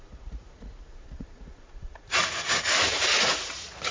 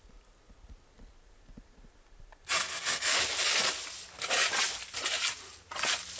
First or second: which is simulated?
first